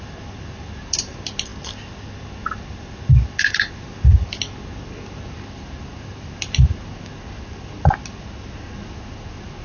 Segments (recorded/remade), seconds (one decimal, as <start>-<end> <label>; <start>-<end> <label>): 0.0-9.6 recorded